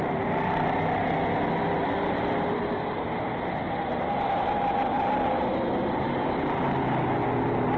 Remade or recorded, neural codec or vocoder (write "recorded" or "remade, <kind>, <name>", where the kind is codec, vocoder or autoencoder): recorded